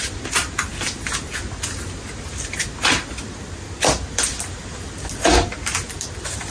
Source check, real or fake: real